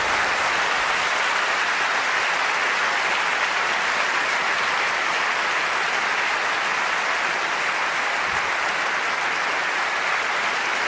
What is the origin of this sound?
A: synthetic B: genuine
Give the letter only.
B